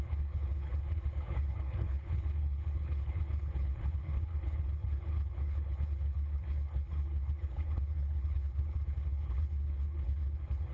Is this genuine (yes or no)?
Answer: no